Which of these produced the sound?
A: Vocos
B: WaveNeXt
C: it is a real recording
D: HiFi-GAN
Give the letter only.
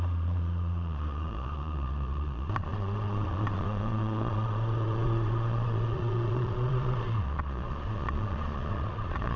A